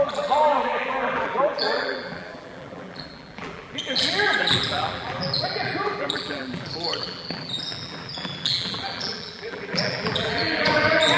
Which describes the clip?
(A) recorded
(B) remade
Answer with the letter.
B